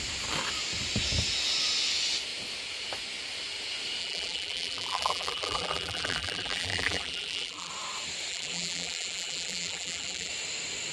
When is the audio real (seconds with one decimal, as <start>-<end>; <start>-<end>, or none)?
0.0-4.0; 7.7-8.3; 10.3-10.9